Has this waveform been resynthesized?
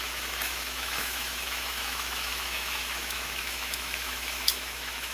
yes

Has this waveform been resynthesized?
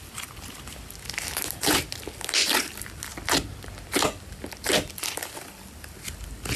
no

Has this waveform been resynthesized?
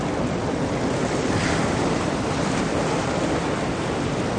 no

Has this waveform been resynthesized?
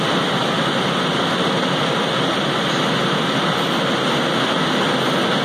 no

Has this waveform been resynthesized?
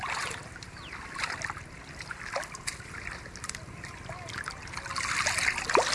no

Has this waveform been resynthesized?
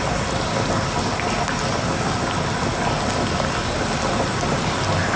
no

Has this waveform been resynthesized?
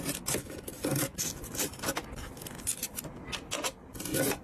no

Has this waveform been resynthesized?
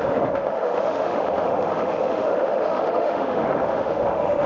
yes